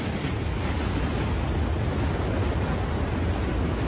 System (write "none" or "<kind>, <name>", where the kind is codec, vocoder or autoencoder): none